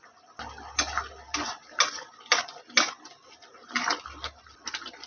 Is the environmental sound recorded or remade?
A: recorded